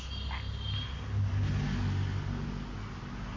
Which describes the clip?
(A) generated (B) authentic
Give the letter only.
B